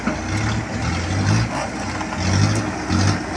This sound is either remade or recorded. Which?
recorded